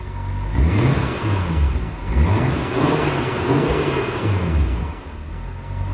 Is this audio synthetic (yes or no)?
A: yes